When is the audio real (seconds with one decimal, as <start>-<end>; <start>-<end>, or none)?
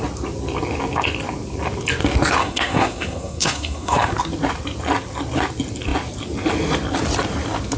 0.0-2.4; 4.1-7.8